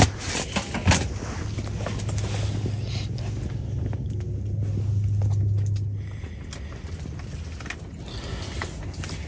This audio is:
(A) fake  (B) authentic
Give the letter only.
B